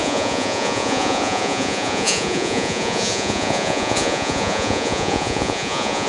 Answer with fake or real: fake